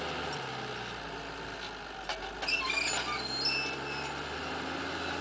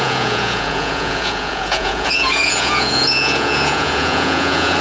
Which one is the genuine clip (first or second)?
first